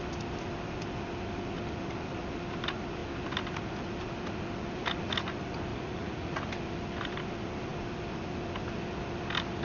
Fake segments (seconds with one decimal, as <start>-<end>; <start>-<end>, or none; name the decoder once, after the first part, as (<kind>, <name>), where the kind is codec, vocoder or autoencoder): 5.7-6.4 (vocoder, Vocos)